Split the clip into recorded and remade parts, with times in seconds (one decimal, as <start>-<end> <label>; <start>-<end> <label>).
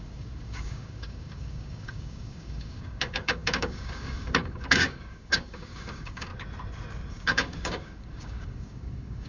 0.0-6.3 remade; 6.3-7.1 recorded; 7.1-9.3 remade